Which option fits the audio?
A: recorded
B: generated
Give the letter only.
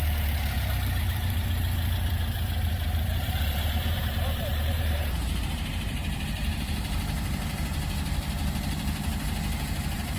B